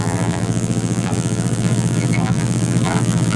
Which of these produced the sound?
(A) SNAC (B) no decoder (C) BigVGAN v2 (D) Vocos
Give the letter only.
C